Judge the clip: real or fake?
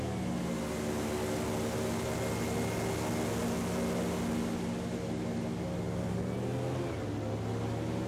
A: real